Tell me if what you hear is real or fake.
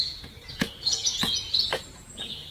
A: fake